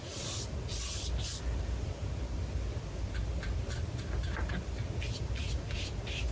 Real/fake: real